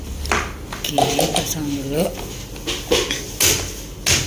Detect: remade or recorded recorded